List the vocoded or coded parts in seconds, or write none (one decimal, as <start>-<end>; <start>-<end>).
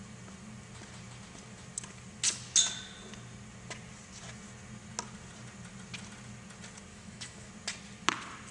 6.9-7.5